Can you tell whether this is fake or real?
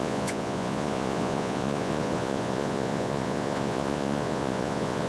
fake